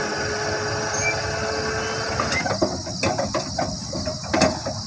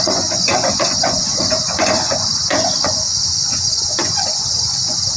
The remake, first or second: second